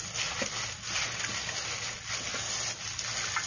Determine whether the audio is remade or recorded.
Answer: recorded